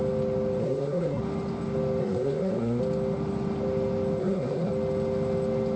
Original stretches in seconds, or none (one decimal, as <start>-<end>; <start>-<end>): 0.0-0.6; 1.2-2.0; 2.8-4.2; 4.7-5.8